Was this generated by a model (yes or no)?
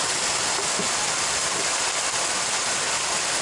no